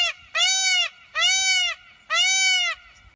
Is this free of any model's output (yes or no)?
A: yes